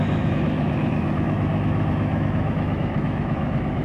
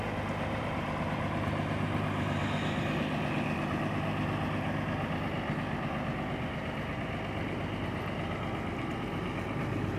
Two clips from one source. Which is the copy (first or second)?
first